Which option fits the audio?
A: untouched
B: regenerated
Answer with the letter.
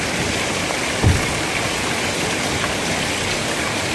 A